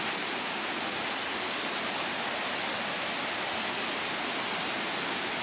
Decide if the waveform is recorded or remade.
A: recorded